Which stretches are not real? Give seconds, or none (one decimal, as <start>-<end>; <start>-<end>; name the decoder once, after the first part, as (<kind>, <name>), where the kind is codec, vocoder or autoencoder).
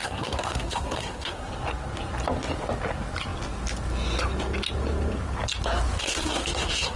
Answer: 0.0-1.5 (codec, SNAC); 6.0-7.0